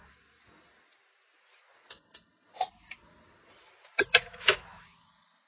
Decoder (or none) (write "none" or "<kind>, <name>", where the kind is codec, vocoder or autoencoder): none